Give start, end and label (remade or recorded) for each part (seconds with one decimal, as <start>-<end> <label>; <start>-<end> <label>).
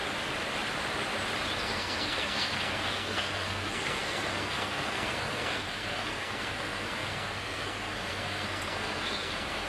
0.0-1.6 recorded; 1.6-9.7 remade